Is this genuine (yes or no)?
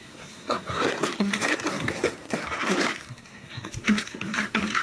no